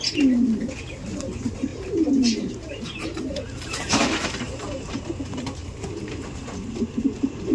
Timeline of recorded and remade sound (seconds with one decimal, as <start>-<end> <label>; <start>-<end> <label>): 0.0-1.7 recorded; 1.7-4.9 remade; 4.9-7.5 recorded